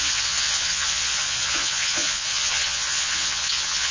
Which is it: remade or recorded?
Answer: remade